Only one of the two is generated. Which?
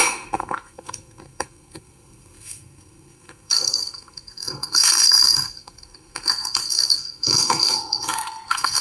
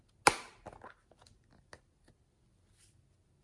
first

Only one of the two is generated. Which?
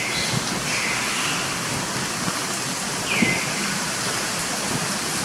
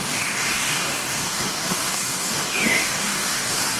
second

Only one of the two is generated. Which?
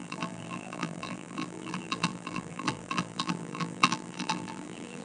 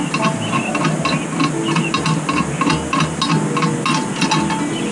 first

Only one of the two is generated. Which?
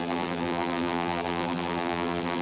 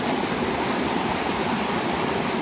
first